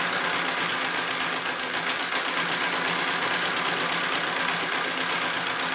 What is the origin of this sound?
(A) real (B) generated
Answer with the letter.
A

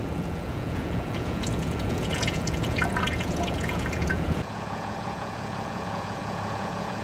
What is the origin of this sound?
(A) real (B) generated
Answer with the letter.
B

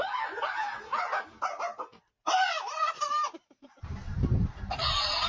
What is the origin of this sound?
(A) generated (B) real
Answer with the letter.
B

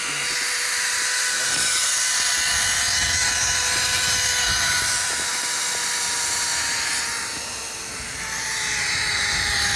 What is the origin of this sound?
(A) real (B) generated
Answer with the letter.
A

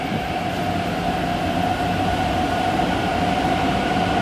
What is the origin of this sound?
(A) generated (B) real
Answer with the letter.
B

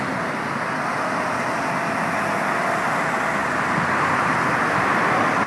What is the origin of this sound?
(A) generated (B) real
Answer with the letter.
B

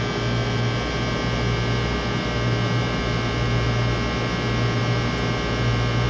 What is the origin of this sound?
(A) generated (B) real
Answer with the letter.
B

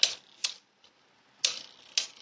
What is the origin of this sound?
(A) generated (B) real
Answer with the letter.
B